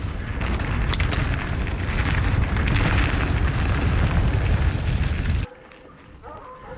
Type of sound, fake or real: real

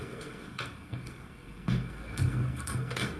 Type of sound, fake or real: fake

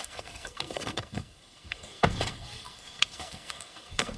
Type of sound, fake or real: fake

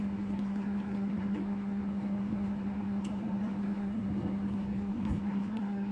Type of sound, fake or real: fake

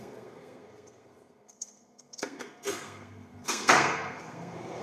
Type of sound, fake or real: fake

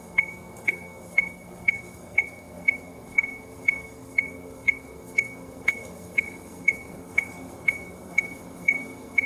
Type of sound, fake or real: fake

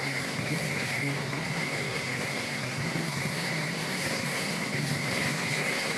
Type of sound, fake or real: fake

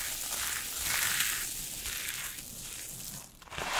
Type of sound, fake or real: real